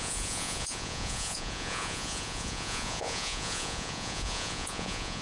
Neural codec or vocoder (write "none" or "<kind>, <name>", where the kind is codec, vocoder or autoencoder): vocoder, Vocos